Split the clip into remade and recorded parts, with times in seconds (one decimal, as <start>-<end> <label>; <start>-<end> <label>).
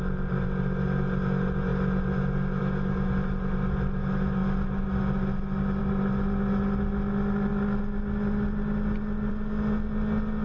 0.0-10.4 recorded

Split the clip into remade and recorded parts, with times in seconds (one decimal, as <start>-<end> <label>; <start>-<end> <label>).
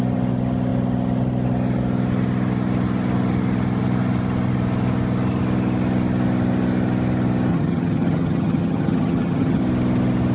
0.0-7.5 recorded; 7.5-9.6 remade; 9.6-10.3 recorded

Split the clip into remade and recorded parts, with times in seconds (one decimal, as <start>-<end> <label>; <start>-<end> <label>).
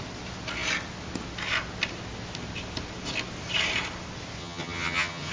0.0-4.4 recorded; 4.4-5.3 remade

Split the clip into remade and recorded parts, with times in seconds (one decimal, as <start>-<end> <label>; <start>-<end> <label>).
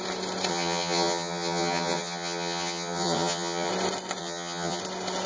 0.0-0.5 recorded; 0.5-3.7 remade; 3.7-4.2 recorded; 4.2-4.8 remade; 4.8-5.3 recorded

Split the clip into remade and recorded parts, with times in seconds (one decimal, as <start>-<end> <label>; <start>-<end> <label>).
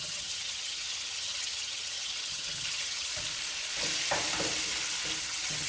0.0-3.1 remade; 3.1-5.2 recorded; 5.2-5.7 remade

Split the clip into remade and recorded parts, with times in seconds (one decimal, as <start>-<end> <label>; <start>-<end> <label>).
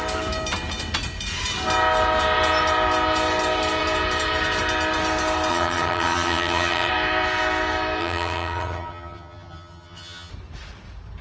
0.0-5.5 recorded; 5.5-6.9 remade; 6.9-8.0 recorded; 8.0-10.3 remade; 10.3-11.2 recorded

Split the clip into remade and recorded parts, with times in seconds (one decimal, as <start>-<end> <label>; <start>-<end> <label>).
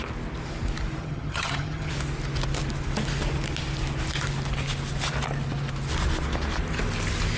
0.0-1.0 recorded; 1.0-1.9 remade; 1.9-7.4 recorded